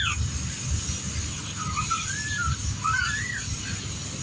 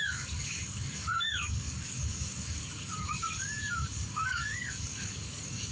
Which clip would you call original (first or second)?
first